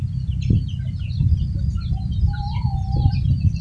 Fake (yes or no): no